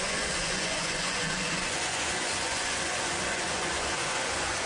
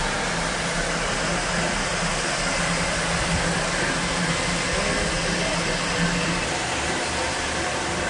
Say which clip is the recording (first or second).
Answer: second